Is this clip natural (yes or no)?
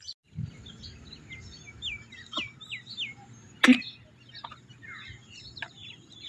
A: yes